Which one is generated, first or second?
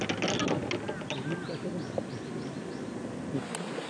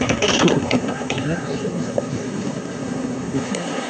second